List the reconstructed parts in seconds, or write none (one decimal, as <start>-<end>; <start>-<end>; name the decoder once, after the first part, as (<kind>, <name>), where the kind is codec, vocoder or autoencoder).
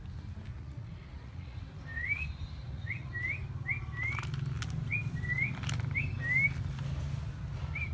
0.5-1.6 (vocoder, Vocos); 2.6-3.1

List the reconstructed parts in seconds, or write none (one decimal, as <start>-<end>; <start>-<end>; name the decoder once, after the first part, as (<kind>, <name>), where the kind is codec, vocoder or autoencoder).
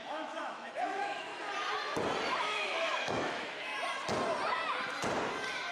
0.0-1.3 (autoencoder, DAC-VAE); 2.4-3.7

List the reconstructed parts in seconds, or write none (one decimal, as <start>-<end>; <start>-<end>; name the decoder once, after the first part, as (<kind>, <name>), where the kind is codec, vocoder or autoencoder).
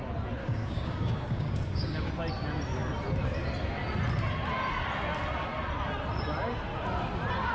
0.4-2.1 (codec, DAC)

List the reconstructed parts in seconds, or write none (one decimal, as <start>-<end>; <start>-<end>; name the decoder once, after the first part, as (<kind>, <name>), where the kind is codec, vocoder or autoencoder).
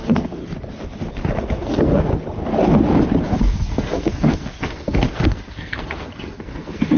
0.0-0.4 (codec, SNAC); 1.1-2.1; 3.2-7.0